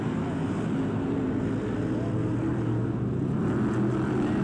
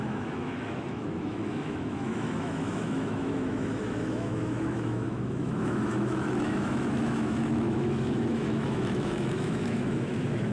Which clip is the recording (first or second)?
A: first